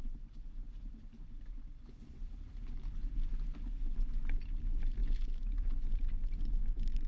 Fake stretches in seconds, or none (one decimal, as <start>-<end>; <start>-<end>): none

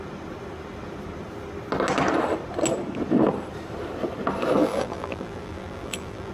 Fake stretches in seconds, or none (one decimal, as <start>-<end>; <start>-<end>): 4.6-6.3